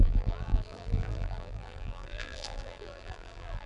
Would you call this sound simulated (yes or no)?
yes